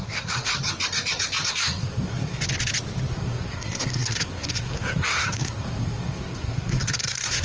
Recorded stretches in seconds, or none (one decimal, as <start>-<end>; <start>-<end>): 0.5-1.5; 2.4-3.1